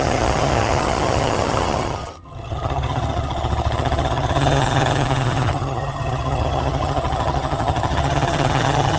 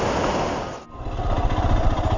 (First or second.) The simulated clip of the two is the first